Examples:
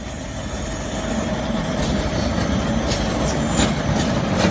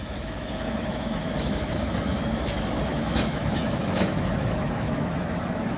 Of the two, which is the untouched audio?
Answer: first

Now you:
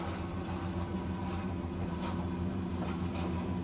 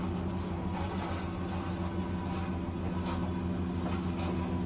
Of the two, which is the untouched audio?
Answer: second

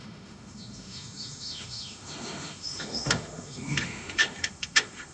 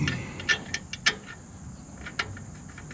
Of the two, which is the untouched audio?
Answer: second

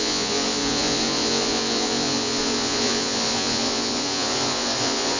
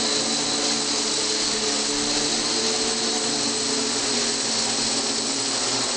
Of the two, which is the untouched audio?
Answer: second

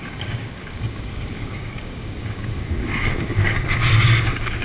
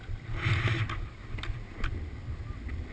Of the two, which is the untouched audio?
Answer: second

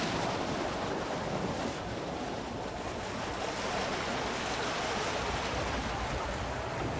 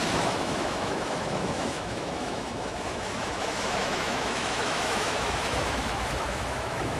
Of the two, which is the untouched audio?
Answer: first